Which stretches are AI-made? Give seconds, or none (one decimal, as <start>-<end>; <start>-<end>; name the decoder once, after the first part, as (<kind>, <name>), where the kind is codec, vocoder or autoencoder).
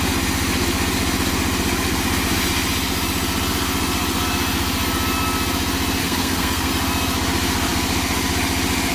6.0-6.7 (codec, SNAC)